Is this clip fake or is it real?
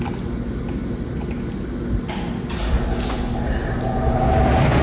real